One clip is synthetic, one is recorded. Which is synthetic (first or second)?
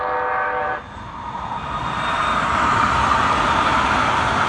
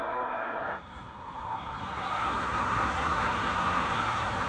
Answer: second